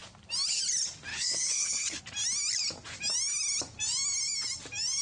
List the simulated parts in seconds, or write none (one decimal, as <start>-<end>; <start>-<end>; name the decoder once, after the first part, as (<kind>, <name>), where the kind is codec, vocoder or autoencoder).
1.1-2.0 (codec, HILCodec)

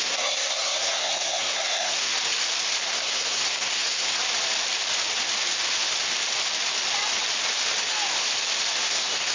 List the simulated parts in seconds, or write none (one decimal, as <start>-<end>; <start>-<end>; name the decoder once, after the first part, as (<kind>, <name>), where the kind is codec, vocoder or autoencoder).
0.0-2.1 (codec, SNAC); 2.8-4.2; 8.8-9.3

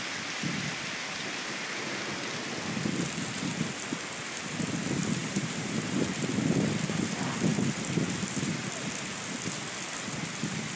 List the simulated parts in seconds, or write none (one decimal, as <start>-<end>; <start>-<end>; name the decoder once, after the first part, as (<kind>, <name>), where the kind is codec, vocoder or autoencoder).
5.2-6.1 (vocoder, BigVGAN v2)